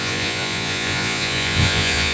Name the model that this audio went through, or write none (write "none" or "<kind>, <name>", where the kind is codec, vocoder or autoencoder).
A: vocoder, Vocos